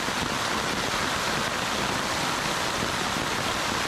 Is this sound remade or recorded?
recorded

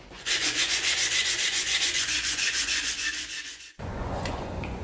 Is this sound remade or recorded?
remade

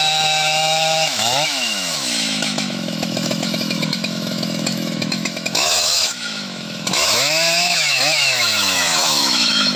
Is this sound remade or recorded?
remade